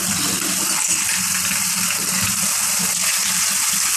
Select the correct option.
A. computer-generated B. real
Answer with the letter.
B